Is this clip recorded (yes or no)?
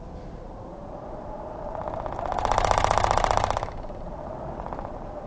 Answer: no